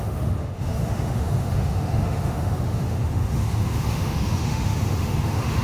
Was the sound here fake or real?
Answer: fake